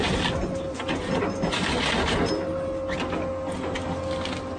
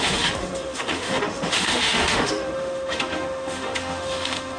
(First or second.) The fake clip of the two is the second